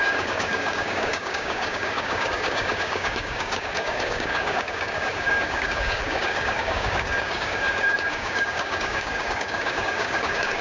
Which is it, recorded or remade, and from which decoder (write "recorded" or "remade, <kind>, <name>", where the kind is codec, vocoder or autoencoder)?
remade, codec, DAC